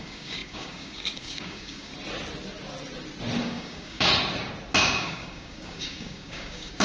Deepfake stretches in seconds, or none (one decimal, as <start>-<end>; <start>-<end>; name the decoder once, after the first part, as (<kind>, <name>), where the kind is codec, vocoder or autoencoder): 0.0-1.9 (codec, DAC); 3.4-4.1; 4.8-6.8